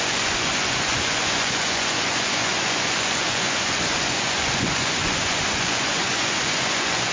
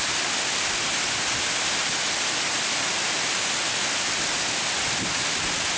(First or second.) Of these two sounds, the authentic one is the second